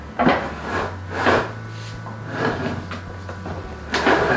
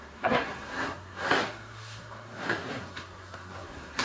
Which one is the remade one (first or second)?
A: second